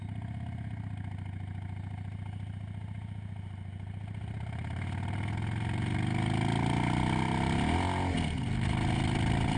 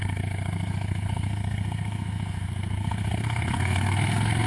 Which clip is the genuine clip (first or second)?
first